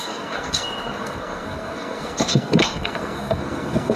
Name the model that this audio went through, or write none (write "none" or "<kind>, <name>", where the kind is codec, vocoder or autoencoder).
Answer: codec, SNAC